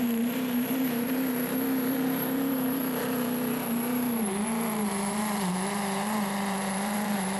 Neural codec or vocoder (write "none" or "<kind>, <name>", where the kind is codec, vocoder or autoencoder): vocoder, BigVGAN v2